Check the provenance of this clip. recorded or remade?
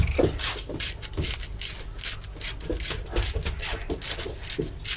recorded